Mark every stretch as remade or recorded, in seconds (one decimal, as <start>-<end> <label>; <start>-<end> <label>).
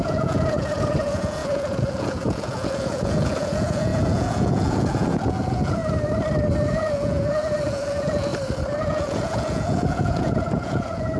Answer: 0.0-5.8 remade; 5.8-6.7 recorded; 6.7-8.3 remade; 8.3-8.8 recorded; 8.8-11.2 remade